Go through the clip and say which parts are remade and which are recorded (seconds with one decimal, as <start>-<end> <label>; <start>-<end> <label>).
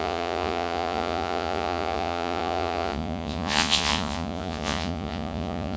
0.0-5.8 remade